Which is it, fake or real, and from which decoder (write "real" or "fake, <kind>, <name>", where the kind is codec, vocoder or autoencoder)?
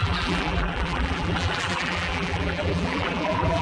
fake, vocoder, BigVGAN v2